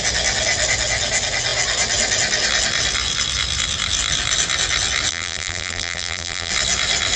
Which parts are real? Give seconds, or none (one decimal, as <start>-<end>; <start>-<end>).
0.0-5.1; 6.5-7.2